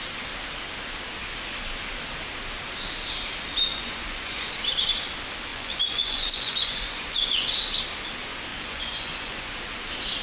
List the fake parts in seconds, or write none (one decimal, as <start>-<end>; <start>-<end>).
3.7-4.5; 5.5-7.5; 8.5-9.5